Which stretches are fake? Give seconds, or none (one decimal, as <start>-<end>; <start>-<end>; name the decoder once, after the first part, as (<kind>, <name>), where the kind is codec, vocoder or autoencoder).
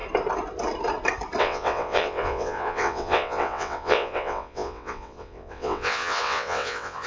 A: 1.4-7.1 (vocoder, WaveNeXt)